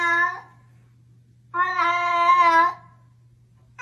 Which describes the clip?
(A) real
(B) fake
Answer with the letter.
A